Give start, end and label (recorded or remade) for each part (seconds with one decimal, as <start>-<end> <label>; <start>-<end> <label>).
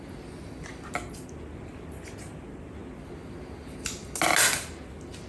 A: 0.0-5.3 recorded